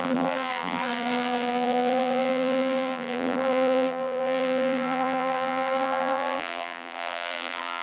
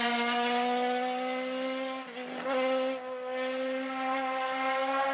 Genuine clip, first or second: second